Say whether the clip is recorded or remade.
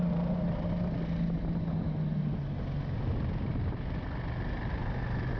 recorded